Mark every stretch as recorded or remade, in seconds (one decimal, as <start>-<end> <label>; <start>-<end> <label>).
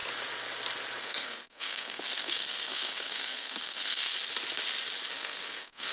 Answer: 0.0-1.0 recorded; 1.0-4.1 remade; 4.1-5.1 recorded; 5.1-5.9 remade